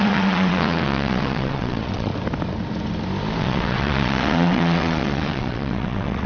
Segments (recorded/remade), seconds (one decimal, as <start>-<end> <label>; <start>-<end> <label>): 0.0-2.1 remade; 2.1-3.4 recorded; 3.4-6.3 remade